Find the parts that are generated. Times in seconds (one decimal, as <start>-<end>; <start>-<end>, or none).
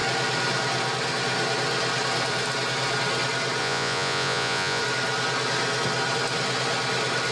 3.6-4.8